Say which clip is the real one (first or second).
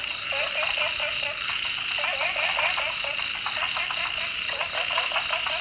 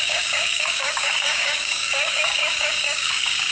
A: first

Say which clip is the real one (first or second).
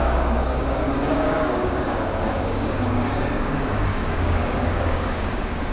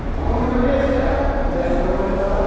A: second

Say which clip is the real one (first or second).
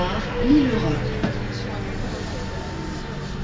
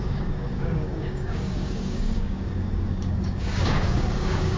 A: first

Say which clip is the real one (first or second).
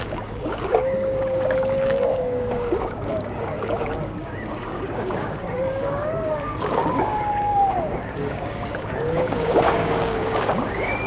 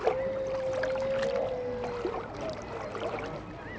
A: second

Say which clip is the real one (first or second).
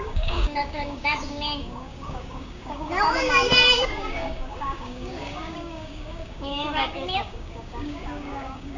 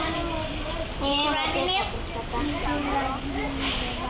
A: second